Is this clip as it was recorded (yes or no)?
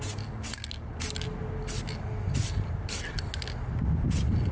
yes